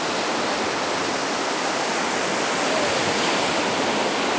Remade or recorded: recorded